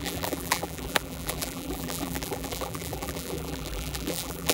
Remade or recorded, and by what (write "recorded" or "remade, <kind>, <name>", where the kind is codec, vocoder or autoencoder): remade, vocoder, BigVGAN v2